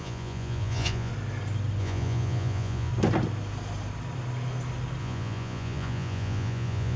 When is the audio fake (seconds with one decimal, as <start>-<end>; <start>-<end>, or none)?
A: 0.0-1.1; 1.8-2.9; 5.0-7.0